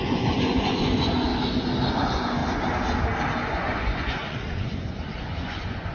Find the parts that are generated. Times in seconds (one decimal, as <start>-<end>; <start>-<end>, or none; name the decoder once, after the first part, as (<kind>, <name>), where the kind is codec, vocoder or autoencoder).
0.0-1.3 (vocoder, Vocos); 1.9-2.4; 3.5-5.9